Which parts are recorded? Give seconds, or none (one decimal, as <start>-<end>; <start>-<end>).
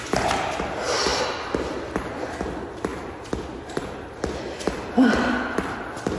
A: 0.0-2.9